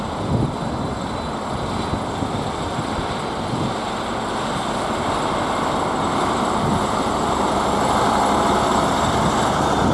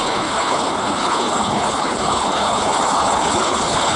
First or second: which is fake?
second